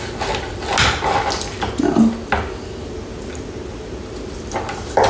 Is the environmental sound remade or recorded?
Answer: recorded